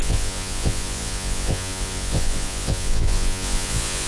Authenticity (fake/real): fake